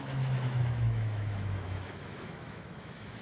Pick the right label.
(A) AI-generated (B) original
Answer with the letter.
A